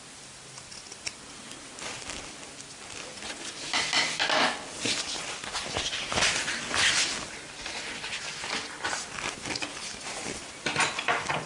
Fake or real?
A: real